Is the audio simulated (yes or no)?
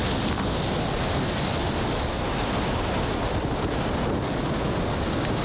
no